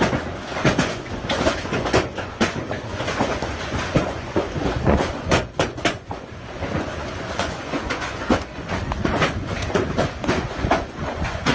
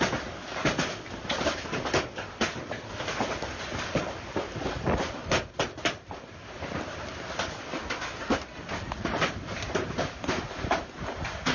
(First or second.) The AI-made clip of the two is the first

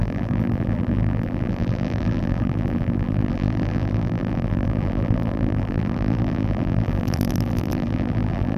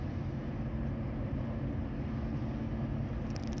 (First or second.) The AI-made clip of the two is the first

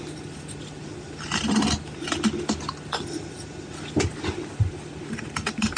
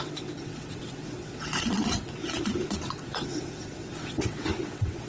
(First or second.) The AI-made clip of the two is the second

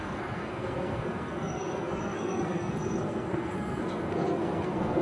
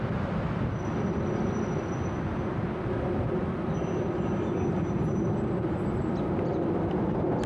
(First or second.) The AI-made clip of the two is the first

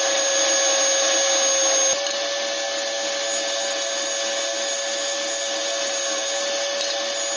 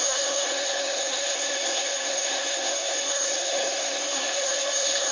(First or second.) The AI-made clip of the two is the second